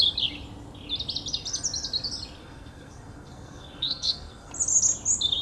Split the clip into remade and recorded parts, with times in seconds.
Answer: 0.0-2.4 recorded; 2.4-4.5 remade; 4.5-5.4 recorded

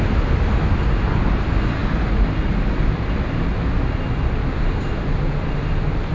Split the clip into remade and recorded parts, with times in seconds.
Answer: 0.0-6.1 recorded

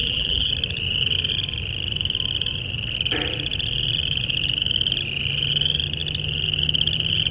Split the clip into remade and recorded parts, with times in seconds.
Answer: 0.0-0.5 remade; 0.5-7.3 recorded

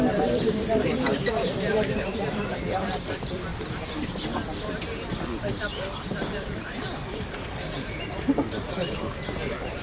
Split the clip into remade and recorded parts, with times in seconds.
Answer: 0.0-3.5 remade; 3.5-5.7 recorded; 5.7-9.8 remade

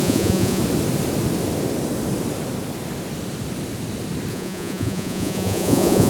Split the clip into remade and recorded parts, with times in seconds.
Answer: 0.0-0.6 remade; 0.6-4.3 recorded; 4.3-6.1 remade

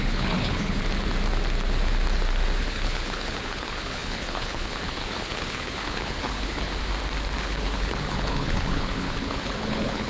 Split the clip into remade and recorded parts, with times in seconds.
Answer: 0.0-0.8 remade; 0.8-2.6 recorded; 2.6-6.7 remade; 6.7-7.4 recorded; 7.4-10.1 remade